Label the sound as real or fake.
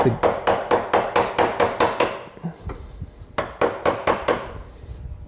real